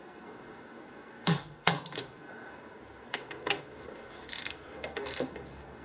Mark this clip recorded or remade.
remade